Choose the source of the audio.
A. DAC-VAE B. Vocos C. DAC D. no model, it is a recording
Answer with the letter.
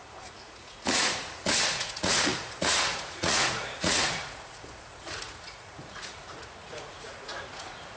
B